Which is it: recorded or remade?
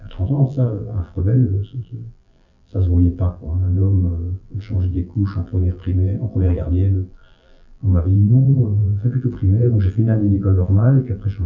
remade